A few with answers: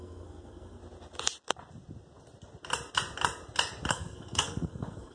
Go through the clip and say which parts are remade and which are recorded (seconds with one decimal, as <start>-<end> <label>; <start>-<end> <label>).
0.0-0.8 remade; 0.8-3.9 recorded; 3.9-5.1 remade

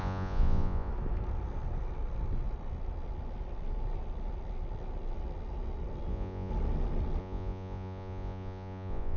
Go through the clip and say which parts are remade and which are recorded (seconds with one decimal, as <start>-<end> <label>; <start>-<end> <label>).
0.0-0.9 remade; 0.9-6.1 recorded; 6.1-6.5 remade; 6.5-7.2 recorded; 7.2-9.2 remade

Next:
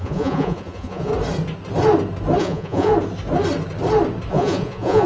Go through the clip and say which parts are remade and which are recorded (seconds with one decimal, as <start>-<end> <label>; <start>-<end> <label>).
0.0-1.1 remade; 1.1-2.4 recorded; 2.4-2.9 remade; 2.9-4.3 recorded; 4.3-5.1 remade

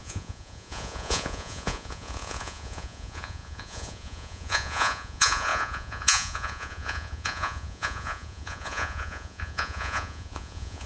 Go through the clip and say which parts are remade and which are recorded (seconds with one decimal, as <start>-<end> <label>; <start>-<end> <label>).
0.0-10.9 remade

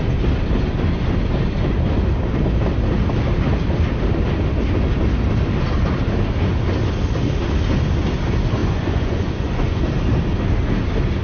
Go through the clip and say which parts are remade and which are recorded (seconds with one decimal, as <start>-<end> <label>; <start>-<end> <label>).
0.0-8.6 recorded; 8.6-9.8 remade; 9.8-11.2 recorded

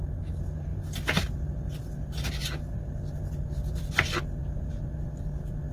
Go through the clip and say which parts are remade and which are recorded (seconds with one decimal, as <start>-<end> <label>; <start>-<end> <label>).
0.0-5.7 recorded

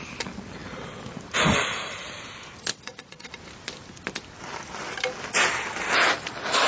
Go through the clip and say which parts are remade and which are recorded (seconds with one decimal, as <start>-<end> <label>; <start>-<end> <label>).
0.0-2.7 recorded; 2.7-3.3 remade; 3.3-6.7 recorded